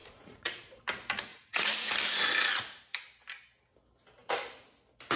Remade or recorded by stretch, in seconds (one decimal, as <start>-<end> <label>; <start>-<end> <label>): 0.0-0.8 remade; 0.8-1.3 recorded; 1.3-1.9 remade; 1.9-5.2 recorded

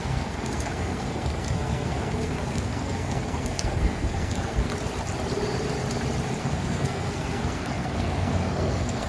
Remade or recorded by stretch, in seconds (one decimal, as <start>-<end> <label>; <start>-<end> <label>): 0.0-4.7 remade; 4.7-6.4 recorded; 6.4-9.1 remade

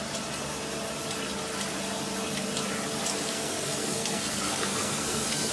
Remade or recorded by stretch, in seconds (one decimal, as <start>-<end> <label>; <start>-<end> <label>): 0.0-3.1 recorded; 3.1-5.5 remade

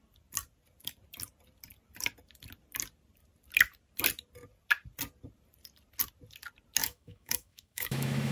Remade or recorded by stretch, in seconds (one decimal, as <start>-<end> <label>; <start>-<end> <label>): 0.0-6.8 recorded; 6.8-8.3 remade